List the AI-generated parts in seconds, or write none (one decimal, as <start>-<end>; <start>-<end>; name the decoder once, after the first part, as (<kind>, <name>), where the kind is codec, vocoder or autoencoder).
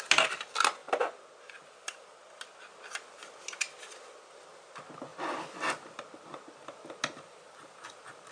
none